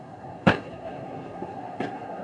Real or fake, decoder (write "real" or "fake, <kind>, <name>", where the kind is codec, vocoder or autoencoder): fake, codec, SNAC